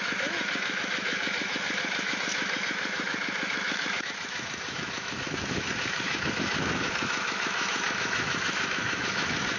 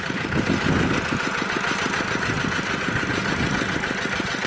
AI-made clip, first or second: first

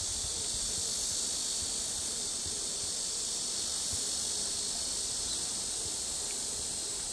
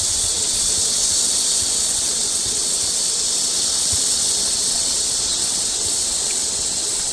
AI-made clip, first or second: second